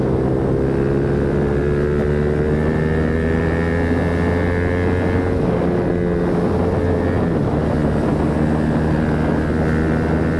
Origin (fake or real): real